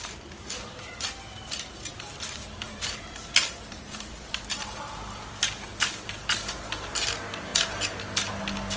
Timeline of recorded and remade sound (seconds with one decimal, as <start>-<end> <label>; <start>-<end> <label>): 0.0-1.9 recorded; 1.9-4.3 remade; 4.3-8.8 recorded